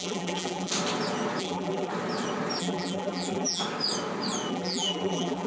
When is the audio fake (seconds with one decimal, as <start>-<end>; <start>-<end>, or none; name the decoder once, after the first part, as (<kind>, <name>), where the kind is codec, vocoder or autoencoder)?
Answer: 0.0-0.7 (vocoder, BigVGAN v2); 1.4-1.9; 2.6-3.6; 4.5-5.5